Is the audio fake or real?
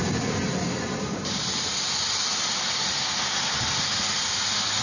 real